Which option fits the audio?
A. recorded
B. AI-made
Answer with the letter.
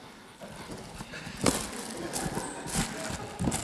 A